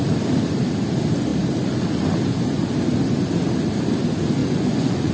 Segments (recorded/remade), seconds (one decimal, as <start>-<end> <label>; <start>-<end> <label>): 0.0-4.4 recorded; 4.4-5.1 remade